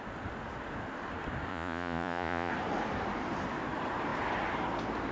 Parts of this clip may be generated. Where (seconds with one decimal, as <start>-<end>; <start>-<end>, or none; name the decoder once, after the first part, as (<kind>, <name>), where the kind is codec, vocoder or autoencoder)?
1.5-2.5 (vocoder, Vocos)

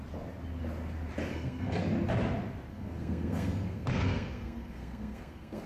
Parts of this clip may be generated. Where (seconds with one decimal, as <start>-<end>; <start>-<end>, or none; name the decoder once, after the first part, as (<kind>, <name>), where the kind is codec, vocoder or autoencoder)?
1.3-1.8 (codec, SNAC); 2.7-5.7

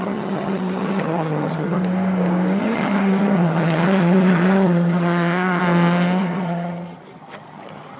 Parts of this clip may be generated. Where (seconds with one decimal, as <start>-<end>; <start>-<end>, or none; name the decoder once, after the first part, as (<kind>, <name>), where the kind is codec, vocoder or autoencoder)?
0.0-1.8 (vocoder, HiFi-GAN); 2.6-5.6; 6.2-8.0